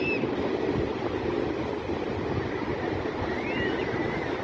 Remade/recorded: recorded